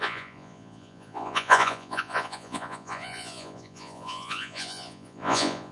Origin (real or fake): fake